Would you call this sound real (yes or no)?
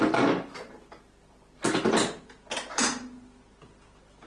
yes